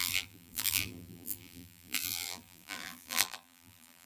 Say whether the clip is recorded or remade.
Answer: remade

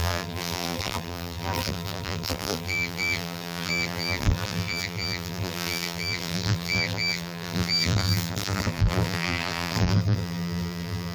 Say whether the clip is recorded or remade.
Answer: remade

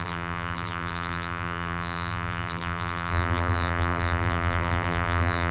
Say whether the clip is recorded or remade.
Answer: remade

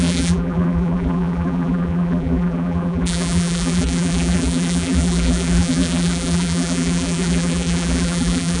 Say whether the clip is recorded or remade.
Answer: remade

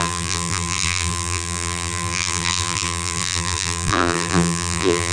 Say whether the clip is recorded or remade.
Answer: remade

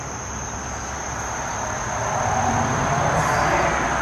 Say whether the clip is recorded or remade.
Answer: recorded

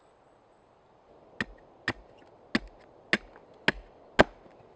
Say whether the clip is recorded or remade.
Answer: recorded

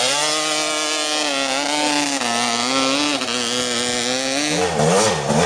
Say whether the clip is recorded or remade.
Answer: recorded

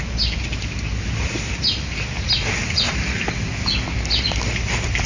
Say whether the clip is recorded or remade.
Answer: recorded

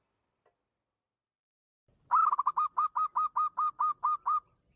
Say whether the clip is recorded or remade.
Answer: remade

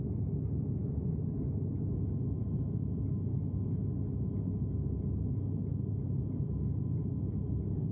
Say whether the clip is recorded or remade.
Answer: recorded